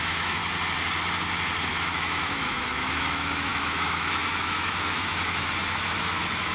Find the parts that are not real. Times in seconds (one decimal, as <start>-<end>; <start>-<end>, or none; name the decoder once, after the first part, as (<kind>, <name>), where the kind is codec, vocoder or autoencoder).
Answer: 0.0-0.4 (autoencoder, DAC-VAE); 1.7-6.5